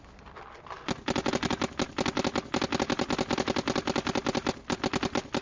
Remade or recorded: recorded